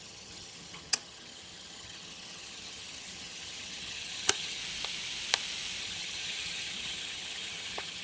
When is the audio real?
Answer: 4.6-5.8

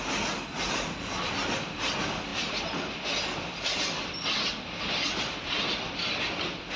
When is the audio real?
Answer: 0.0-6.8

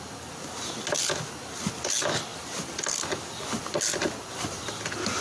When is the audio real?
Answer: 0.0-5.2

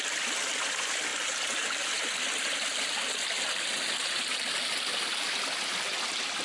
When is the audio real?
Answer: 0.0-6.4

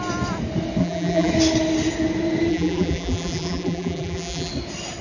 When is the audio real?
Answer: 0.0-0.8; 1.3-2.5; 4.5-5.0

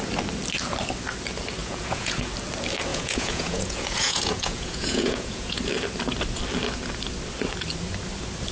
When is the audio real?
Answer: 0.0-1.6; 2.3-2.9; 5.6-8.5

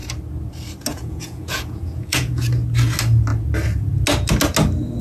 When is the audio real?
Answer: 0.0-0.9; 2.5-5.0